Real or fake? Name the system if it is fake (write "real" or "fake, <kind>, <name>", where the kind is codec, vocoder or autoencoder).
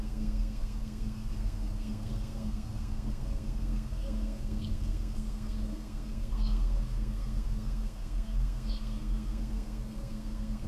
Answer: fake, codec, SNAC